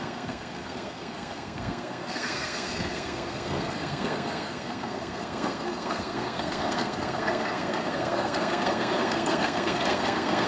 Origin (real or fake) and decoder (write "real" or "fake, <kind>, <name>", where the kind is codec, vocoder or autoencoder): fake, codec, SNAC